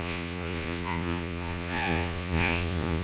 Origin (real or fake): fake